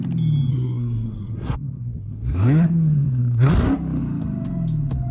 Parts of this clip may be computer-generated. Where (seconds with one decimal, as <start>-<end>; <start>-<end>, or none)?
0.5-3.5